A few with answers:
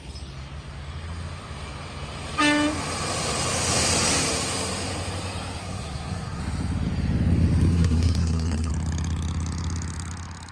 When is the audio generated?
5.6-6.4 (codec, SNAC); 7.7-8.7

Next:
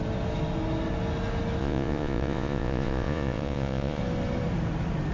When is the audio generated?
1.6-4.0 (vocoder, Vocos)